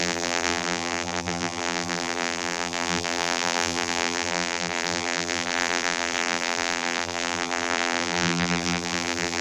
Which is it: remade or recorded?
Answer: remade